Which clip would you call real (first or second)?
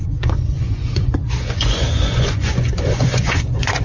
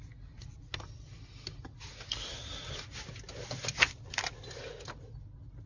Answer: second